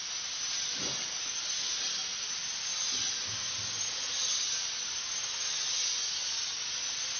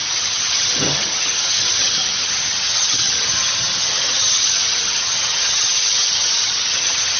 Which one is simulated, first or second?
second